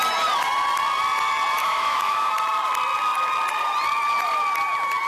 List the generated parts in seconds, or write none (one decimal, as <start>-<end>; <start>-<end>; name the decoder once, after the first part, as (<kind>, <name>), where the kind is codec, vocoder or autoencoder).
1.6-2.3 (autoencoder, DAC-VAE)